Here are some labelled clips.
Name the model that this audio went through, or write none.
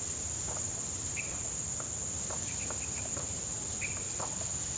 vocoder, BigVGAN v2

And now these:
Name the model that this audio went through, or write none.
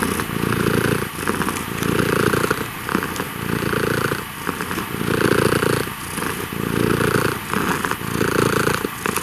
none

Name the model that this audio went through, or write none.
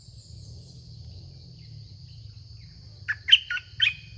none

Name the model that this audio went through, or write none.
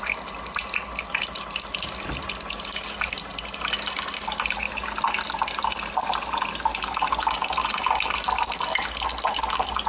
none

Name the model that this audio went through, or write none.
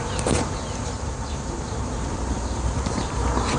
vocoder, BigVGAN v2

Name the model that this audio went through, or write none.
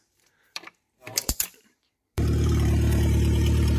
vocoder, BigVGAN v2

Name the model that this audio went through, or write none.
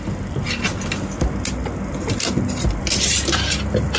none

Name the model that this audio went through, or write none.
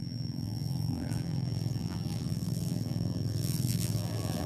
vocoder, BigVGAN v2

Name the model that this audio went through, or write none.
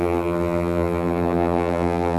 vocoder, BigVGAN v2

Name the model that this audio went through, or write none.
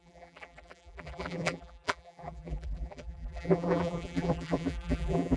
vocoder, BigVGAN v2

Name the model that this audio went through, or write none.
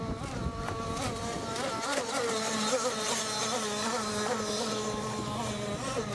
none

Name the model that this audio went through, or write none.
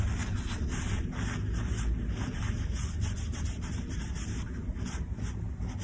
none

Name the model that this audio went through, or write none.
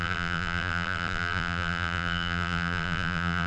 vocoder, BigVGAN v2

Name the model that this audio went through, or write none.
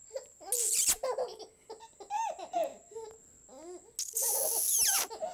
none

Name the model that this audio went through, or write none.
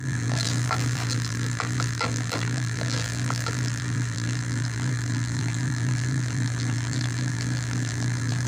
vocoder, BigVGAN v2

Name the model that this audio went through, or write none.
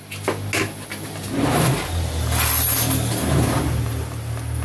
none